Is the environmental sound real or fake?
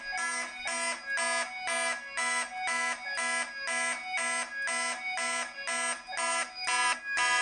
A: real